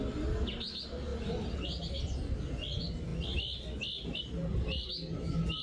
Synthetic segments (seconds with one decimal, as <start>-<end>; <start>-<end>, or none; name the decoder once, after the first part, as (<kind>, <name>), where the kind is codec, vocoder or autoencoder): none